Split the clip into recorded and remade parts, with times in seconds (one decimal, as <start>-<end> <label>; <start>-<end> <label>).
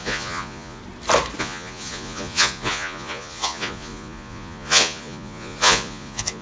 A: 0.0-0.8 remade; 0.8-1.4 recorded; 1.4-6.4 remade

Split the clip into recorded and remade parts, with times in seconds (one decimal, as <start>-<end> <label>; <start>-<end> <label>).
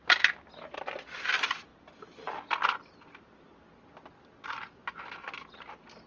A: 0.0-6.1 recorded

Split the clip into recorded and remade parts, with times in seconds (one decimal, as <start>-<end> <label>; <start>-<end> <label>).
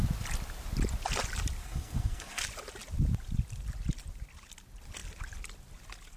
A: 0.0-1.6 recorded; 1.6-2.4 remade; 2.4-6.2 recorded